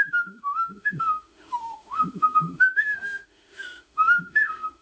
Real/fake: fake